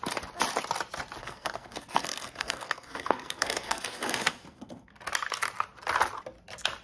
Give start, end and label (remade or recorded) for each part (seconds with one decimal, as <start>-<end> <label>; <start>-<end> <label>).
0.0-1.2 recorded; 1.2-4.9 remade; 4.9-6.8 recorded